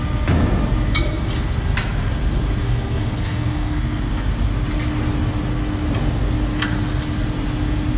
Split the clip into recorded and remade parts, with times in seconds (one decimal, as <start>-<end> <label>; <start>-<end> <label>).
0.0-2.6 recorded; 2.6-4.1 remade; 4.1-8.0 recorded